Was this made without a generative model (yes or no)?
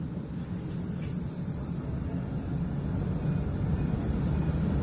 yes